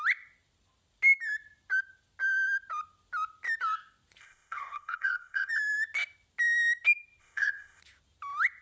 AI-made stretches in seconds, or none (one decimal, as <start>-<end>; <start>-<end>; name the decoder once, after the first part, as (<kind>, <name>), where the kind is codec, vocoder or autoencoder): 4.2-5.5 (codec, ZipCodec); 7.2-7.8